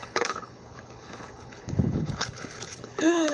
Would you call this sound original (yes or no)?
no